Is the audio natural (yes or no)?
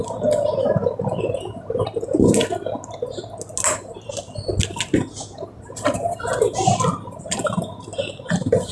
yes